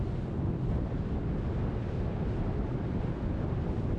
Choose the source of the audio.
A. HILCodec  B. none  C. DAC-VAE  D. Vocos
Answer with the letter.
B